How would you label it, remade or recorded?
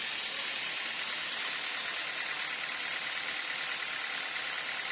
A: recorded